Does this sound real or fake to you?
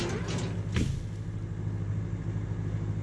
real